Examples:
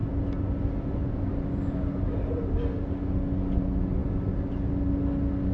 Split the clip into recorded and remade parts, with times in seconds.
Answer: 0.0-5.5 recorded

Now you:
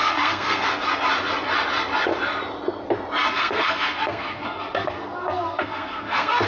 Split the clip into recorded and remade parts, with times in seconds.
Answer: 0.0-0.7 remade; 0.7-3.3 recorded; 3.3-6.5 remade

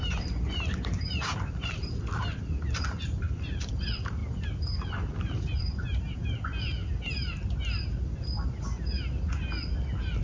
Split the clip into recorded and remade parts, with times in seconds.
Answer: 0.0-4.2 remade; 4.2-5.2 recorded; 5.2-6.8 remade; 6.8-10.2 recorded

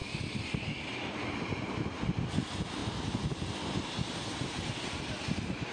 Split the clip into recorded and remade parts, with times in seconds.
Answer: 0.0-5.7 recorded

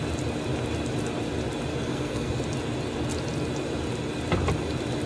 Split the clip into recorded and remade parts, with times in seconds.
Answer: 0.0-1.7 recorded; 1.7-2.4 remade; 2.4-5.1 recorded